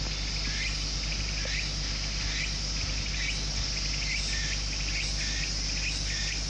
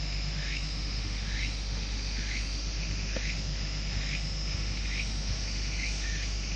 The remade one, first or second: second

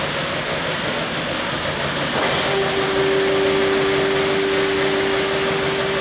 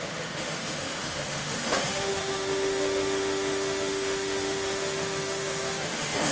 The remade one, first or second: second